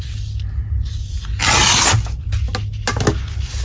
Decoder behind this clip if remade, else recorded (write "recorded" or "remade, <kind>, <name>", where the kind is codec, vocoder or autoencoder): recorded